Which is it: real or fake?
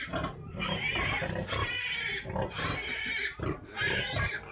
fake